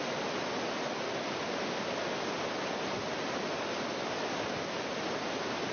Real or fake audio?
real